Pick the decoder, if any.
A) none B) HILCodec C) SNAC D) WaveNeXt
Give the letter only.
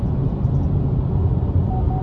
A